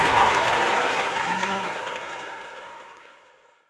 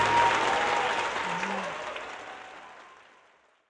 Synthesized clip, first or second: first